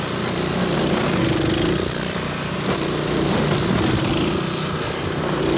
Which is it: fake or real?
real